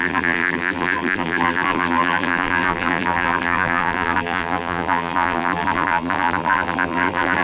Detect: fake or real fake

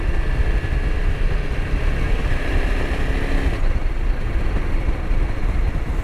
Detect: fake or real real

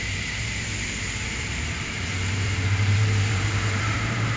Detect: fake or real fake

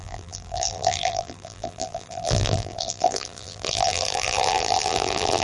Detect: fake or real fake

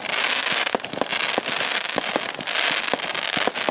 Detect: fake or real real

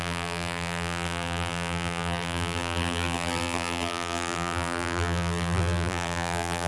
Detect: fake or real fake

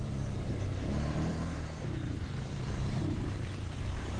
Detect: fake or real fake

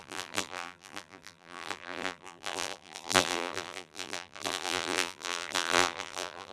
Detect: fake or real fake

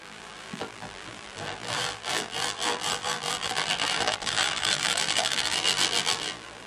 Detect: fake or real fake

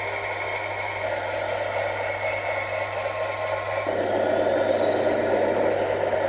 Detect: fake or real real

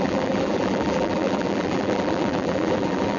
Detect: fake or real fake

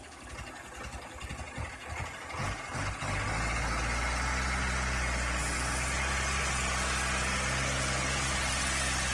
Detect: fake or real real